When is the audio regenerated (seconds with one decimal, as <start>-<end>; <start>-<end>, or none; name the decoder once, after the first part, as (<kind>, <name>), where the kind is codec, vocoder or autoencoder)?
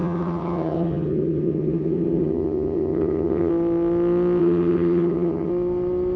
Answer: 0.0-3.5 (vocoder, HiFi-GAN); 4.4-5.5